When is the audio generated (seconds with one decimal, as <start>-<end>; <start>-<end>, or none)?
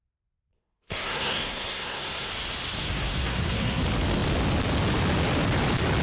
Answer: 0.5-2.3; 2.8-3.8